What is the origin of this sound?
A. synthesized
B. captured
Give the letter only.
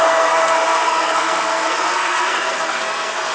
A